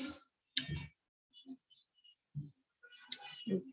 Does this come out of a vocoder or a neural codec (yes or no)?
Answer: no